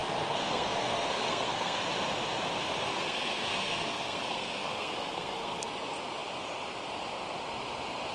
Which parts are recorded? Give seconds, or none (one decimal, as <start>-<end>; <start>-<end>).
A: 1.8-2.9; 5.7-8.1